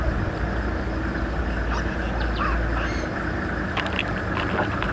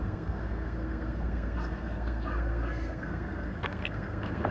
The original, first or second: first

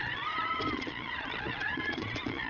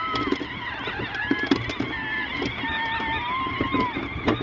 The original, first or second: second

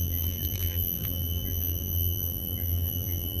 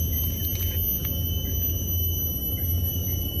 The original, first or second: second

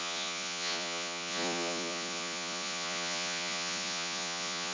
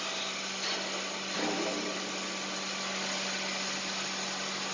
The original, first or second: second